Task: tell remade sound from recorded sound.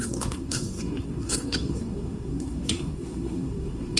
remade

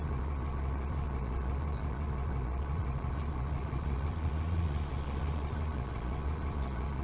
remade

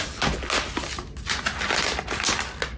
recorded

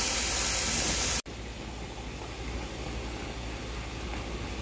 recorded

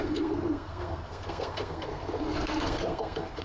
remade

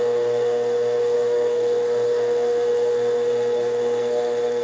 remade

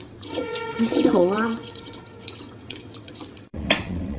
remade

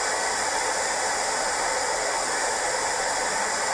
recorded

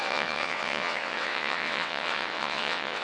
remade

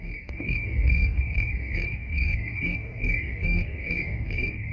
remade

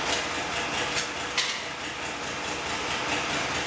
recorded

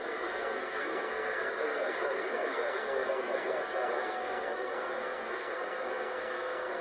remade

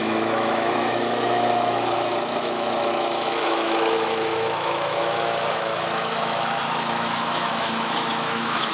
remade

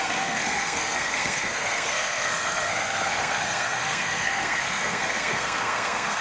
remade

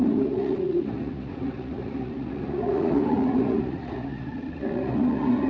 remade